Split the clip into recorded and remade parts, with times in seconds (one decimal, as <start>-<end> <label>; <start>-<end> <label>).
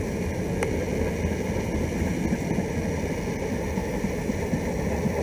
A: 0.0-5.2 recorded